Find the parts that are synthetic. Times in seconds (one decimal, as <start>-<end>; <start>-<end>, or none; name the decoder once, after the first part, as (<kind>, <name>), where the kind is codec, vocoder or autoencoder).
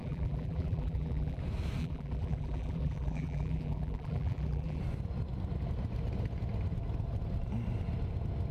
0.0-1.4 (vocoder, BigVGAN v2); 1.8-4.8